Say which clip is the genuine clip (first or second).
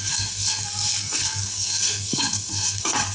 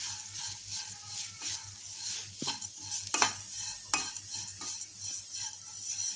second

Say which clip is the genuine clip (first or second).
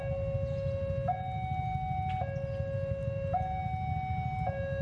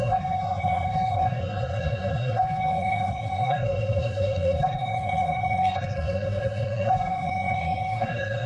first